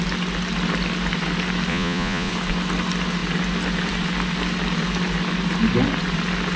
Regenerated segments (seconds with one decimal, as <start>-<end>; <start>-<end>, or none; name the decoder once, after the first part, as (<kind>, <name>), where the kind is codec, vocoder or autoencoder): 1.7-2.3 (vocoder, Vocos)